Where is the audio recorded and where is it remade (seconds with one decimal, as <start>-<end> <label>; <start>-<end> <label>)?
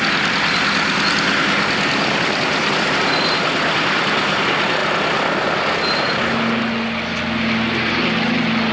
0.0-8.7 recorded